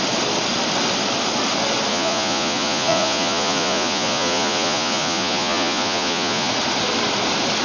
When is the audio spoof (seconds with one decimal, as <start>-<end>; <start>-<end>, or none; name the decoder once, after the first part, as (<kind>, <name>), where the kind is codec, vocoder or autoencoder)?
1.9-6.5 (vocoder, Vocos)